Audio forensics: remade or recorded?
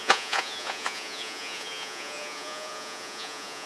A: remade